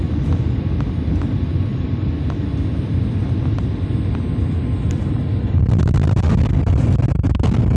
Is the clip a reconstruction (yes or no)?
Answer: no